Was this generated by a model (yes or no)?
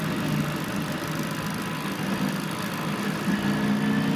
no